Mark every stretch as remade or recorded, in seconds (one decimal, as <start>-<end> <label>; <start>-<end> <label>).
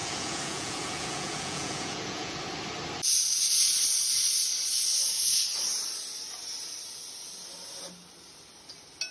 0.0-2.4 remade; 2.4-9.1 recorded